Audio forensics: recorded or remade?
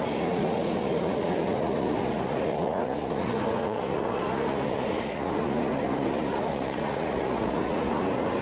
remade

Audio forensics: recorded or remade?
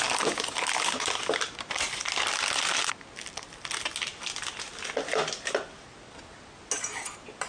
recorded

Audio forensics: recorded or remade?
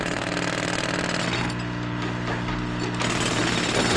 recorded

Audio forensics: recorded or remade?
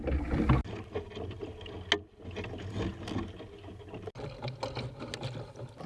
recorded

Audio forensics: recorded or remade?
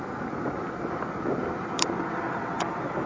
recorded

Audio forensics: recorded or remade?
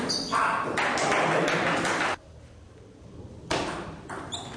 remade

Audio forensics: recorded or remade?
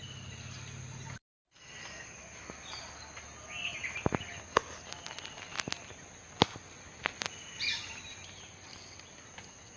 recorded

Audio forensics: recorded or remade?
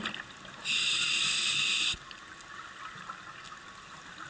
recorded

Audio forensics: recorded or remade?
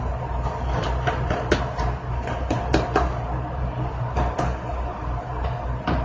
remade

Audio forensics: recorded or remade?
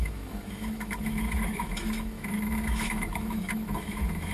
remade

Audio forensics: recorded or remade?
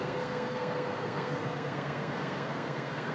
remade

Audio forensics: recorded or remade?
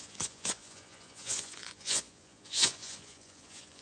remade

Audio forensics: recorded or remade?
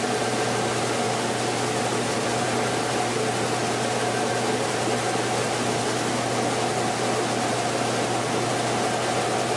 recorded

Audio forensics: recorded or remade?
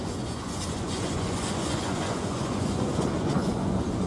remade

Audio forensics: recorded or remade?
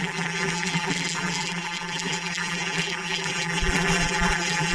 remade